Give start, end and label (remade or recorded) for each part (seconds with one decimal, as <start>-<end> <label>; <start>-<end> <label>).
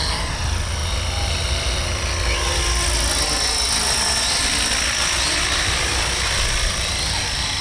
0.0-7.6 recorded